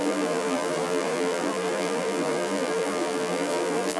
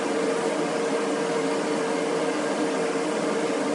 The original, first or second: second